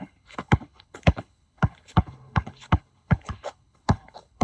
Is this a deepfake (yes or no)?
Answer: yes